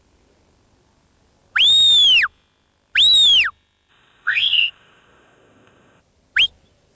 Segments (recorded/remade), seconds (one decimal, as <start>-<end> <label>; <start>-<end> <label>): 0.0-3.9 recorded; 3.9-6.0 remade; 6.0-6.9 recorded